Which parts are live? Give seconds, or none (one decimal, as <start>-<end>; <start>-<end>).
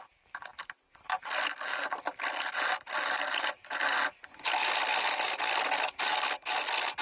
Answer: 0.0-0.5; 2.3-7.0